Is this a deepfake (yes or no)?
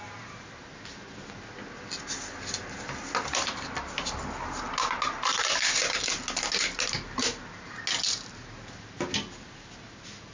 no